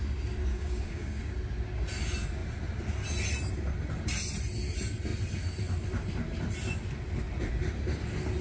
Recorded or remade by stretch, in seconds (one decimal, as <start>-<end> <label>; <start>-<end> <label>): 0.0-0.5 recorded; 0.5-1.2 remade; 1.2-8.4 recorded